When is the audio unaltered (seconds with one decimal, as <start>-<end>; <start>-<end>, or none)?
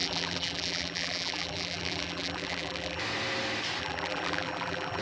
3.0-3.8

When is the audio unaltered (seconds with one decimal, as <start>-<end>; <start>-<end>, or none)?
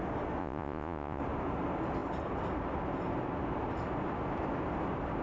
0.0-0.4; 1.2-5.2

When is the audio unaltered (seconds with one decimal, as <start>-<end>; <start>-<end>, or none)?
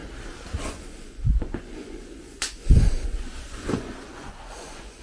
0.0-0.6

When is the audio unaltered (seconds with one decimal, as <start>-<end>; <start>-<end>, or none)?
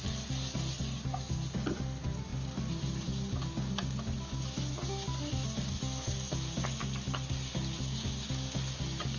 0.0-9.2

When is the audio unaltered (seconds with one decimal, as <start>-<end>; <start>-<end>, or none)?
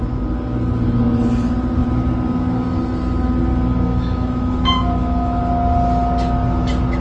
0.0-3.5; 5.4-7.0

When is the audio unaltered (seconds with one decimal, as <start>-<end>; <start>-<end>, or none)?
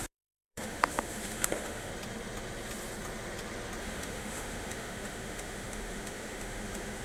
1.9-3.8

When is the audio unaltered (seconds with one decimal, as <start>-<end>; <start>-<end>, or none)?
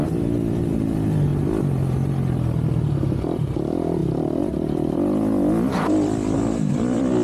0.0-7.2